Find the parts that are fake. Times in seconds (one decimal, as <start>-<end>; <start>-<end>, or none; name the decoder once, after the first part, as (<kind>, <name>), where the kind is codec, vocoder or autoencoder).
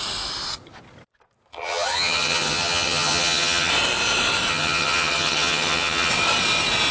1.5-3.7 (vocoder, HiFi-GAN); 4.5-6.1